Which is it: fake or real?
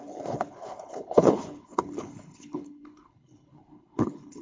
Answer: fake